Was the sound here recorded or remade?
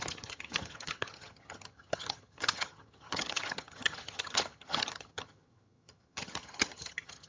remade